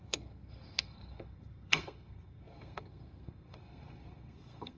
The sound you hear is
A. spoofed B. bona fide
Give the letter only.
A